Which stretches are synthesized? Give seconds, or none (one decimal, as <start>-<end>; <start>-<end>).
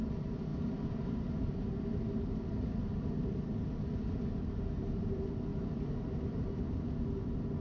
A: 0.5-3.1; 5.5-6.6